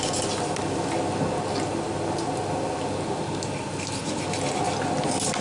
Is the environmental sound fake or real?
real